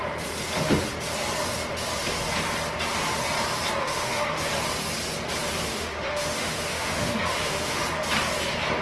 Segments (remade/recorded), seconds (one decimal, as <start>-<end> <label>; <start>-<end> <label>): 0.0-3.8 recorded; 3.8-4.4 remade; 4.4-5.7 recorded; 5.7-7.8 remade; 7.8-8.8 recorded